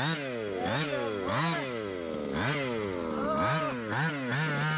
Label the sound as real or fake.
real